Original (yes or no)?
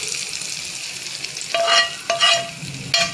yes